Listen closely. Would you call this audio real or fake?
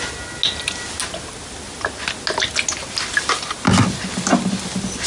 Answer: real